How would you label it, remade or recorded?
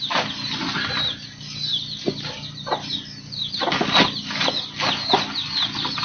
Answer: recorded